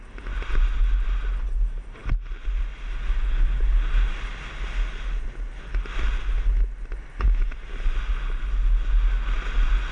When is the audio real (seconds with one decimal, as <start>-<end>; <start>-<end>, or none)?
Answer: 0.0-9.9